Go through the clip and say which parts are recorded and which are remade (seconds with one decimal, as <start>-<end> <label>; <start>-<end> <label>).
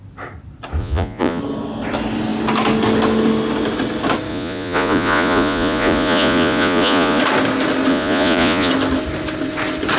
0.0-0.8 recorded; 0.8-1.4 remade; 1.4-4.3 recorded; 4.3-7.2 remade; 7.2-7.9 recorded; 7.9-8.7 remade; 8.7-10.0 recorded